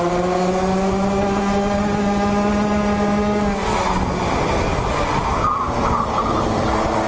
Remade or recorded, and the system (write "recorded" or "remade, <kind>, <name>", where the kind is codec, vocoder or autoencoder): recorded